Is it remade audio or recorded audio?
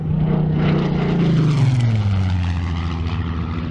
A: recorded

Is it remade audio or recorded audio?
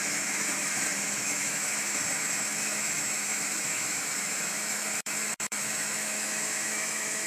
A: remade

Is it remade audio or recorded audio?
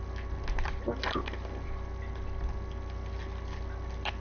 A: recorded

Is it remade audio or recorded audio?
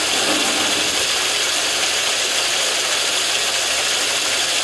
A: recorded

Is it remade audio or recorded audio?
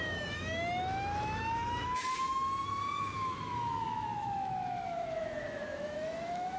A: remade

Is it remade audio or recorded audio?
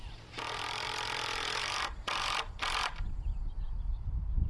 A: recorded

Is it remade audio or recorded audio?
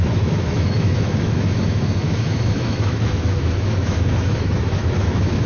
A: remade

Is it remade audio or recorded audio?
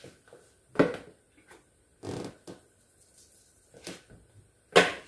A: recorded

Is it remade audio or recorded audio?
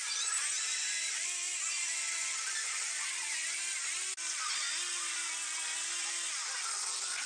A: recorded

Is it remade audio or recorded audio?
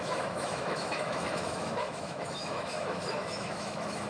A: remade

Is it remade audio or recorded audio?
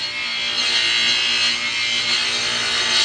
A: recorded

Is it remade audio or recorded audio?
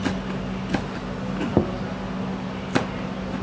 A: recorded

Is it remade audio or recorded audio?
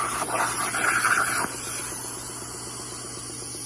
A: recorded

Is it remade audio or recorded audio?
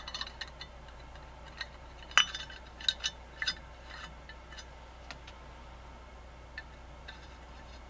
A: recorded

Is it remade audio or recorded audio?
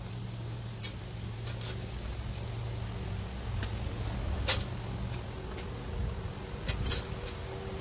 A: recorded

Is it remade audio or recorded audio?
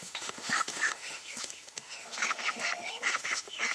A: remade